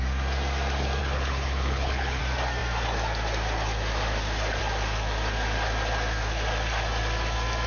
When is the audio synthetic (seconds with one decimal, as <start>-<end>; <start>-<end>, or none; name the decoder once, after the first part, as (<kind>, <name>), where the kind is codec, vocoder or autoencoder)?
1.0-2.2 (codec, HILCodec)